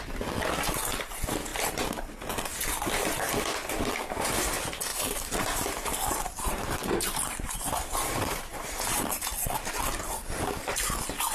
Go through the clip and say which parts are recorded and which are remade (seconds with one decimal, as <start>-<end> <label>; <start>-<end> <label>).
0.0-4.9 recorded; 4.9-9.8 remade; 9.8-11.3 recorded